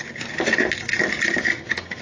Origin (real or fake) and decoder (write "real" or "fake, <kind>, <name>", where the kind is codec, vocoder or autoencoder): real